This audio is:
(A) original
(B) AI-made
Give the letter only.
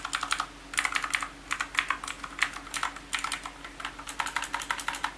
A